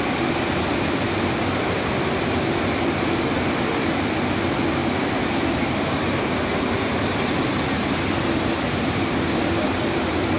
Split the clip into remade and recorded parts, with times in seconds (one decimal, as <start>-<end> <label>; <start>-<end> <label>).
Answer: 0.0-10.4 recorded